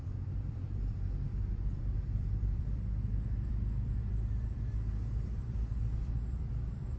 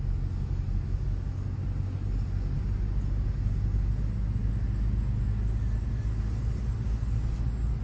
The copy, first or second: first